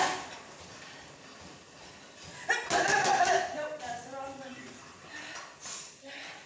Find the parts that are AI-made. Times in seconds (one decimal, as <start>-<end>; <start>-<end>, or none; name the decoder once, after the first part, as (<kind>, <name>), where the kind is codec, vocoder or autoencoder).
none